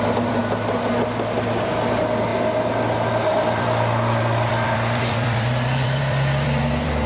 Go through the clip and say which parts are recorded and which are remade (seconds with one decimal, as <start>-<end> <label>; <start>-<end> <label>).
0.0-0.4 remade; 0.4-1.0 recorded; 1.0-2.3 remade; 2.3-3.1 recorded; 3.1-7.1 remade